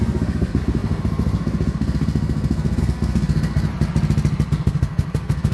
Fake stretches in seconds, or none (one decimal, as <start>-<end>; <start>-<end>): 0.0-3.7; 4.5-5.5